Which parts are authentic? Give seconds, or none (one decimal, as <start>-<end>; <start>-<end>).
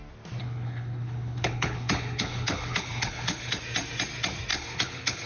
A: 0.0-0.4; 3.6-4.5